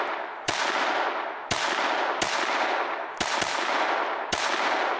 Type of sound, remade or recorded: recorded